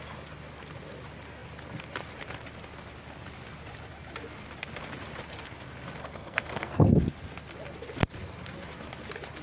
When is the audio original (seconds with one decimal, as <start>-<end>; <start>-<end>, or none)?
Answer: 0.0-6.0; 7.1-9.4